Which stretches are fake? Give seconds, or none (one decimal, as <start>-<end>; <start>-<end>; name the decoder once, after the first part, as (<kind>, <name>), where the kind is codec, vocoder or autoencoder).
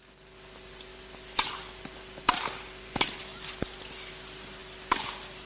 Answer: 0.0-3.3 (vocoder, BigVGAN v2); 4.1-5.5